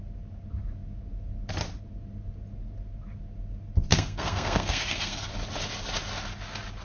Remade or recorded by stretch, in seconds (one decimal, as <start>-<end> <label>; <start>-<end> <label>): 0.0-3.9 recorded; 3.9-5.3 remade; 5.3-6.8 recorded